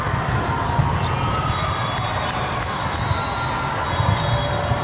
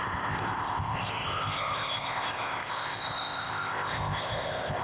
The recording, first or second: first